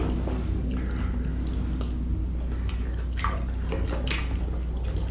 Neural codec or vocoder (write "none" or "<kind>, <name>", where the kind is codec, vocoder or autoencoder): none